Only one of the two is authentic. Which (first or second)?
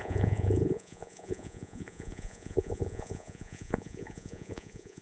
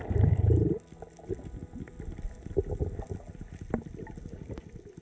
second